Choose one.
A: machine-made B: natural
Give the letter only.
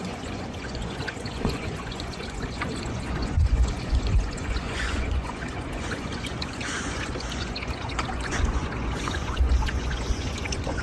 A